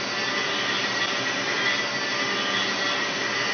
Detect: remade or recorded recorded